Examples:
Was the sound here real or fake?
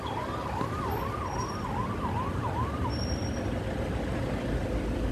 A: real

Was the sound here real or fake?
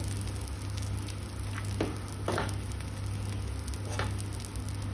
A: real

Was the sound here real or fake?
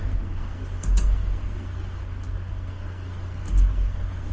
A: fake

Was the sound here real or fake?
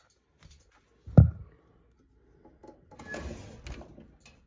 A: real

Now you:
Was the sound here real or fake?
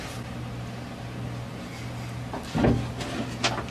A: real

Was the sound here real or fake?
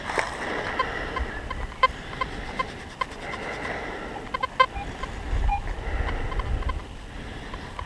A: real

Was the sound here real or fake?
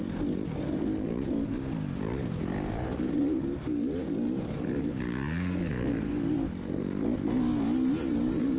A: real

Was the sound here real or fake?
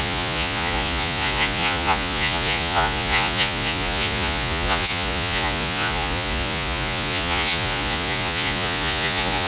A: fake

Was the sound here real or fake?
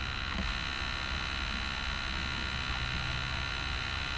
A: real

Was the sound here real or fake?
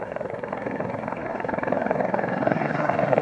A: fake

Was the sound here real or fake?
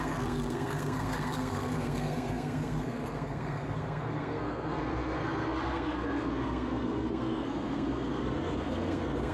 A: fake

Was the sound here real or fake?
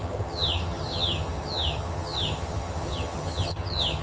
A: fake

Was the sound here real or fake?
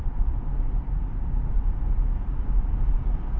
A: real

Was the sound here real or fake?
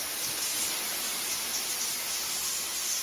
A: real